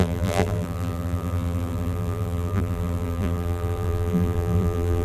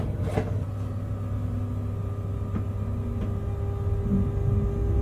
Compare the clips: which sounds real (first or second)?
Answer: second